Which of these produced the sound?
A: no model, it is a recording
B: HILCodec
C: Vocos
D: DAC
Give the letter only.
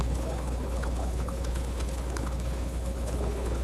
B